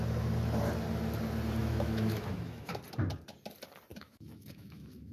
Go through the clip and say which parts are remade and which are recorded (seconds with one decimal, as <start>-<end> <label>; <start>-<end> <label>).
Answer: 0.0-1.6 recorded; 1.6-2.8 remade; 2.8-3.9 recorded; 3.9-5.1 remade